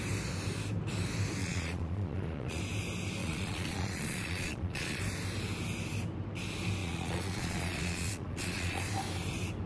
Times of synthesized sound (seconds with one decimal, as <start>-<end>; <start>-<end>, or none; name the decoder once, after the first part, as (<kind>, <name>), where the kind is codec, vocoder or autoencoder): 1.4-2.6 (vocoder, Vocos); 3.2-5.0; 6.8-8.8